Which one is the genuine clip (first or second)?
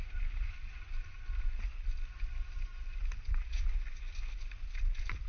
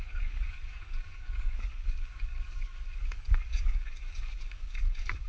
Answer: first